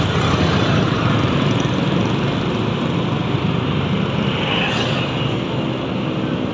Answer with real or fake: real